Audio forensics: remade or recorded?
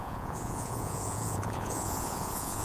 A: remade